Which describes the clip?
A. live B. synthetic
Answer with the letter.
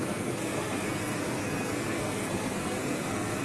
B